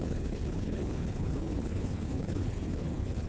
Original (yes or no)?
no